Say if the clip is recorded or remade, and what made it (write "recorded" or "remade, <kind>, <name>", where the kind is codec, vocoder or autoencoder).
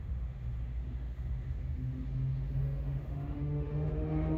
remade, autoencoder, DAC-VAE